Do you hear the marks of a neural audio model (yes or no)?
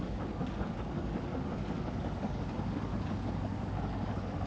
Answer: yes